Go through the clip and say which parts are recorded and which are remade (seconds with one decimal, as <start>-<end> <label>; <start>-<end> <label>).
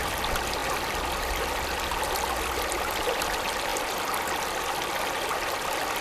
0.0-6.0 recorded